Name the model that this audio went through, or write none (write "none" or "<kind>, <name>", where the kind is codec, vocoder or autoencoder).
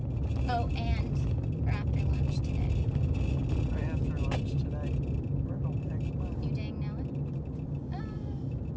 none